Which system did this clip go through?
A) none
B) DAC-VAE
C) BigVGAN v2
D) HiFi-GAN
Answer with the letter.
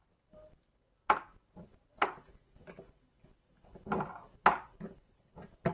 A